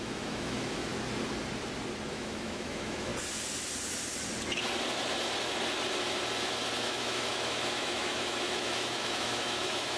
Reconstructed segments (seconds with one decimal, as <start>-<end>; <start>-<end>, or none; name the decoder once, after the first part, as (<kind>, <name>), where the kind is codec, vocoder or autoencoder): 0.0-0.9 (autoencoder, DAC-VAE); 2.1-3.1; 6.8-10.0